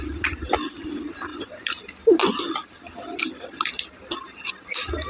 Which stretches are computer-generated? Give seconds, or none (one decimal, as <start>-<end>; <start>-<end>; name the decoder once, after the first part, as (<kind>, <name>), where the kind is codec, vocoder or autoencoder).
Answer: none